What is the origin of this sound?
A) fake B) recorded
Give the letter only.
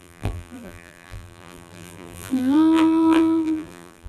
A